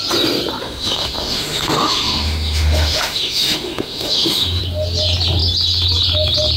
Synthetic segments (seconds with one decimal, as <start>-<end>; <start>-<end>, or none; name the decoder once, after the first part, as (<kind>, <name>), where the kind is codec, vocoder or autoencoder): 0.6-4.6 (autoencoder, DAC-VAE)